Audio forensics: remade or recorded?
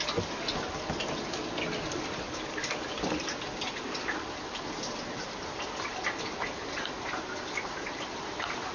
recorded